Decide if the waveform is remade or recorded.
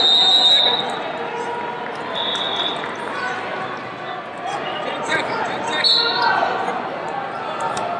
recorded